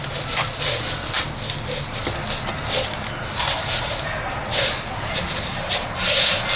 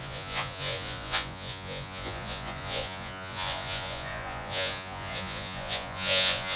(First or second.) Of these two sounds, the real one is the first